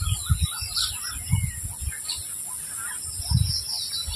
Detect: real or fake real